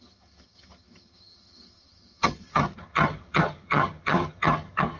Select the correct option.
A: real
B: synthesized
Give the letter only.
B